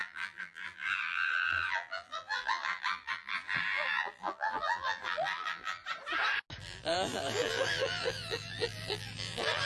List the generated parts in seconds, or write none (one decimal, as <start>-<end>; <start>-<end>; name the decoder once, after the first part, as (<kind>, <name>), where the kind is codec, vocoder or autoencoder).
0.0-5.8 (vocoder, BigVGAN v2); 6.6-9.7